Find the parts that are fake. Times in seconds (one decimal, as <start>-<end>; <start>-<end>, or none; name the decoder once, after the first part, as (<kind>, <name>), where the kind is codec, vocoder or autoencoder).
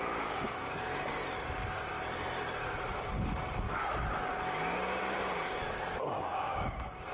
0.0-0.9 (codec, DAC); 5.0-7.1